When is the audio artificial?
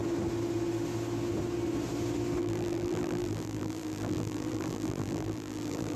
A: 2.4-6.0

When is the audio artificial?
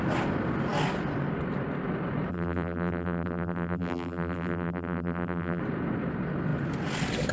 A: 2.3-5.6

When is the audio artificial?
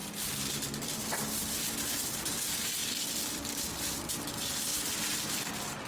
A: 2.8-4.3; 4.7-5.9